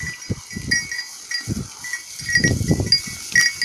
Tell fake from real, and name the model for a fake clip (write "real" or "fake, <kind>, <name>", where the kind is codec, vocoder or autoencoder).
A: real